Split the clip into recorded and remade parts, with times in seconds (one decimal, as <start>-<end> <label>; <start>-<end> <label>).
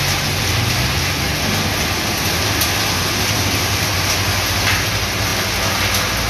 0.0-6.3 recorded